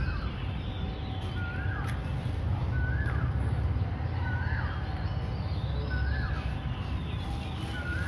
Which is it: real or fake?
real